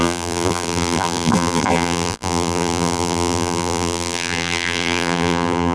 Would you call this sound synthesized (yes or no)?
yes